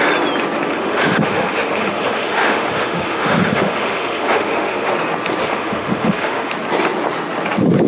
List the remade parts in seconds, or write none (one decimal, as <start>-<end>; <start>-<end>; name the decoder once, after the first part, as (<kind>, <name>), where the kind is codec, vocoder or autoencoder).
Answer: 0.7-4.9 (autoencoder, DAC-VAE); 5.4-6.5